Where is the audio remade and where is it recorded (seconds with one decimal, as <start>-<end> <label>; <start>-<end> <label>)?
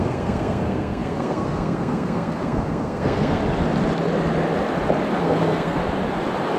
0.0-3.4 remade; 3.4-5.2 recorded; 5.2-5.8 remade; 5.8-6.6 recorded